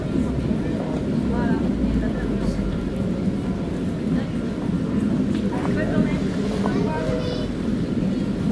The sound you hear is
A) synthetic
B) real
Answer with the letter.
B